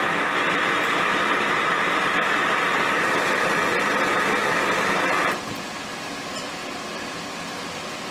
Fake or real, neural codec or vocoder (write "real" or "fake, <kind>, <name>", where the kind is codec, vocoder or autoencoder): real